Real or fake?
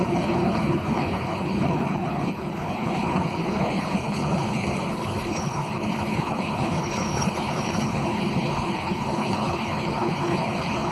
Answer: fake